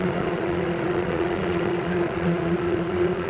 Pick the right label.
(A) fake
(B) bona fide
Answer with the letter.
A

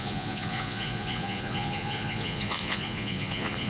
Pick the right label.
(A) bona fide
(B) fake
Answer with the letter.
B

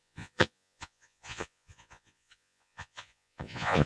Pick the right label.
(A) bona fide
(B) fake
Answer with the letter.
B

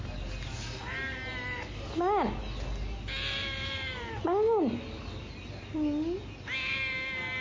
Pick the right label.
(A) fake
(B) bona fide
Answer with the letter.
B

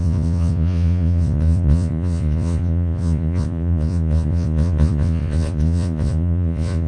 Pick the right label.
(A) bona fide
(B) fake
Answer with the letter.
B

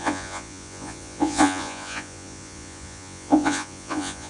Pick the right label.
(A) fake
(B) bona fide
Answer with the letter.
A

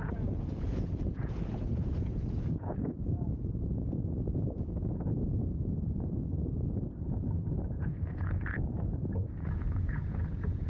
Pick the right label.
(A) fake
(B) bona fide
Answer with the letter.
A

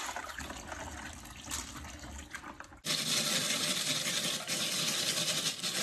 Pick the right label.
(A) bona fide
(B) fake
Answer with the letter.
A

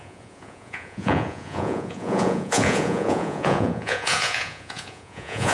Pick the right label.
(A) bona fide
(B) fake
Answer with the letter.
B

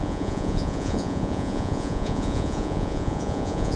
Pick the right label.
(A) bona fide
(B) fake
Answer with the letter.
B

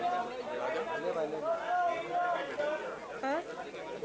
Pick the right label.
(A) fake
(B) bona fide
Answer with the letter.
B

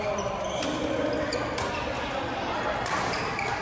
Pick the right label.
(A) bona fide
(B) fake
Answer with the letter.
A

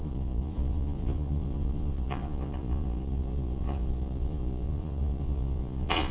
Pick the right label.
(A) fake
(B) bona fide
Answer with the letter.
A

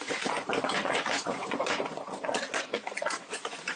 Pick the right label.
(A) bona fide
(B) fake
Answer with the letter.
B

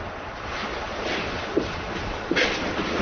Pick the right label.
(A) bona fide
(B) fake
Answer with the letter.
B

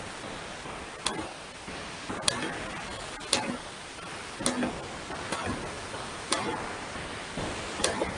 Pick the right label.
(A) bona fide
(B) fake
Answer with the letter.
A